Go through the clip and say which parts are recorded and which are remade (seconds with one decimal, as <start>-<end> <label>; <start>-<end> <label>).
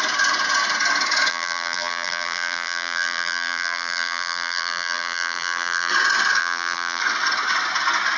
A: 0.0-1.3 recorded; 1.3-5.9 remade; 5.9-6.4 recorded; 6.4-7.0 remade; 7.0-8.2 recorded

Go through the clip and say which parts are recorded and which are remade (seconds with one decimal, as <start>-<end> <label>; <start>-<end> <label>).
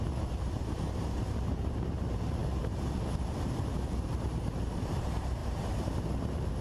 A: 0.0-6.6 remade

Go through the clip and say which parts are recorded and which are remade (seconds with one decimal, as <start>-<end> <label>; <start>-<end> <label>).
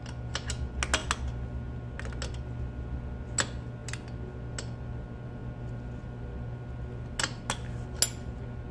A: 0.0-8.7 recorded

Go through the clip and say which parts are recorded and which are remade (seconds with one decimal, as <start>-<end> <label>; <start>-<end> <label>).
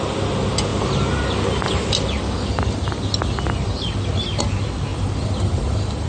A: 0.0-4.9 recorded; 4.9-6.1 remade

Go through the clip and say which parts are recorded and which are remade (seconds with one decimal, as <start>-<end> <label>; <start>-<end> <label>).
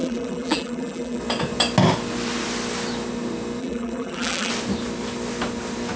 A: 0.0-1.2 remade; 1.2-3.6 recorded; 3.6-4.5 remade; 4.5-6.0 recorded